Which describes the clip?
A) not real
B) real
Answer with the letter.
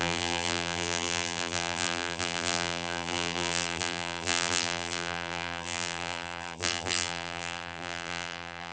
A